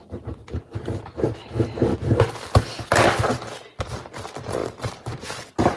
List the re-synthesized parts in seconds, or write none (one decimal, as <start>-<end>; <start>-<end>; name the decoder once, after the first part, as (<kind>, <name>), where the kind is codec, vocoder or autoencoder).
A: 4.6-5.3 (vocoder, BigVGAN v2)